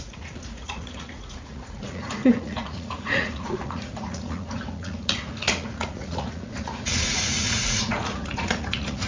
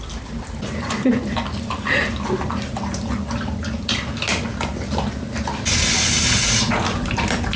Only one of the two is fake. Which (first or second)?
first